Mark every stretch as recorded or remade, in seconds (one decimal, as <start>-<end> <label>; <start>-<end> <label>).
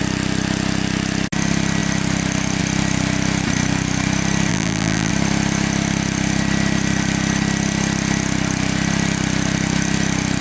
0.0-4.5 recorded; 4.5-5.1 remade; 5.1-10.4 recorded